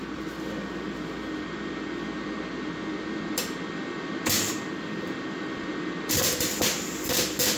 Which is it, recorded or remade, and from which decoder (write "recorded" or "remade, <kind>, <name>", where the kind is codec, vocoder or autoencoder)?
recorded